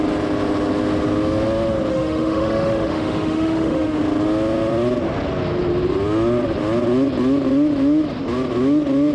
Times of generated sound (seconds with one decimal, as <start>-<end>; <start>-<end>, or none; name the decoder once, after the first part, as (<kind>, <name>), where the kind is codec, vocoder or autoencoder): 1.9-4.0 (autoencoder, DAC-VAE)